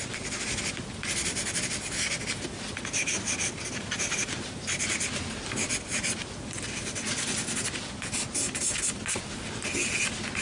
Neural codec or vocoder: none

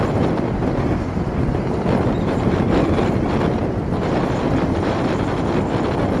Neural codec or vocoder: none